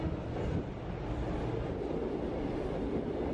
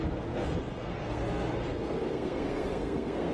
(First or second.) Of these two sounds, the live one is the first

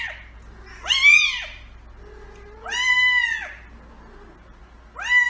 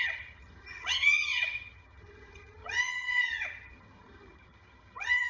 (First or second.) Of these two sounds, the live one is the first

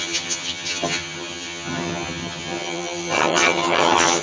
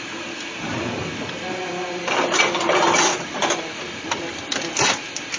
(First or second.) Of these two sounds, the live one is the second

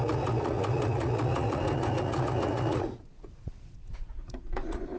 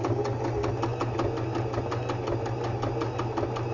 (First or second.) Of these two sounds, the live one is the second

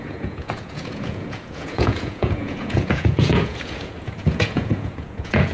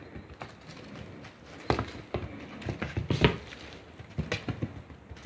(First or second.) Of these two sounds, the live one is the second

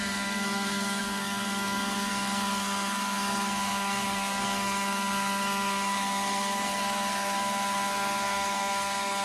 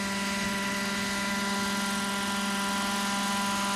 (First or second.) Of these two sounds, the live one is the second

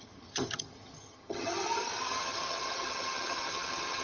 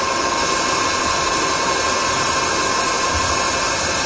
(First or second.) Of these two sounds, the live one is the second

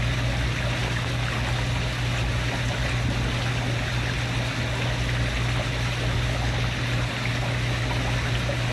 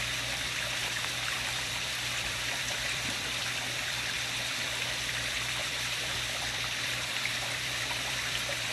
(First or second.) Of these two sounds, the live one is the first